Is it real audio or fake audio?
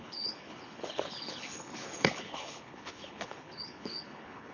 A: fake